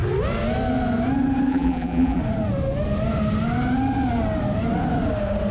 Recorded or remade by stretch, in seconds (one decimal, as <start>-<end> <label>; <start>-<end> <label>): 0.0-1.5 recorded; 1.5-2.2 remade; 2.2-5.5 recorded